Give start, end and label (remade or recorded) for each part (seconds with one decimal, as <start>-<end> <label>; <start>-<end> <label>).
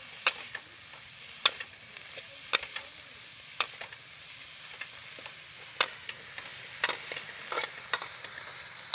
0.0-8.9 recorded